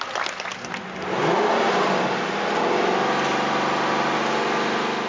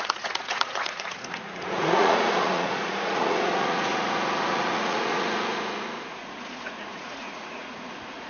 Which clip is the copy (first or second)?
second